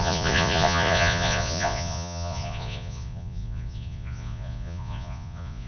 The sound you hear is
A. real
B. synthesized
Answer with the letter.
B